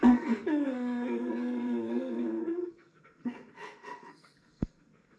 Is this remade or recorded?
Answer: remade